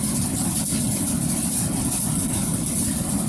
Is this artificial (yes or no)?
no